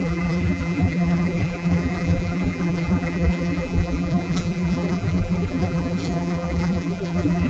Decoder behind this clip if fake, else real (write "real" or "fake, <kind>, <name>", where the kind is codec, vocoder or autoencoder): fake, vocoder, BigVGAN v2